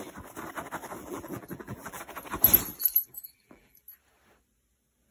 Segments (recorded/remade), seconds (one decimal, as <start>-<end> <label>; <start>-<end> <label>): 0.0-1.0 recorded; 1.0-2.0 remade; 2.0-2.7 recorded; 2.7-3.8 remade; 3.8-5.1 recorded